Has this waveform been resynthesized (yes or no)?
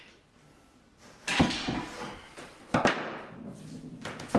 no